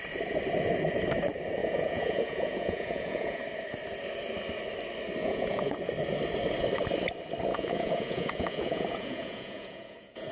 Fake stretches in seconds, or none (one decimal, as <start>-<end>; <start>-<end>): 1.6-3.4; 5.2-5.9; 7.5-10.3